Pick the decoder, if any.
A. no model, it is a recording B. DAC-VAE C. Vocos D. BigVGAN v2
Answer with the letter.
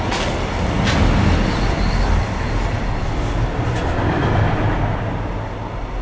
A